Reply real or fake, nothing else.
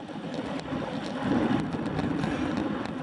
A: real